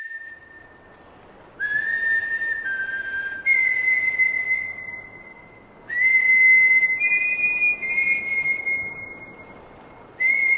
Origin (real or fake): real